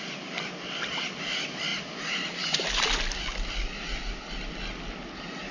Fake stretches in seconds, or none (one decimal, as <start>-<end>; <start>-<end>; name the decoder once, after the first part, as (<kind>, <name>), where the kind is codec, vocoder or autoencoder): none